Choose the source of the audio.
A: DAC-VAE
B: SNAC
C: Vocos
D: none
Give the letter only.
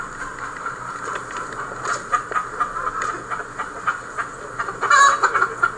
D